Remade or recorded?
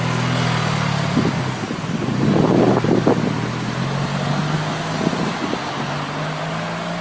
recorded